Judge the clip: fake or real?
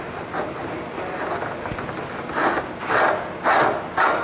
real